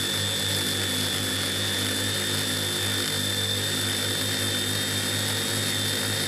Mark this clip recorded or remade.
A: recorded